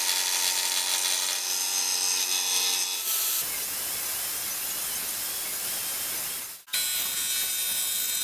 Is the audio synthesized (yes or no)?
no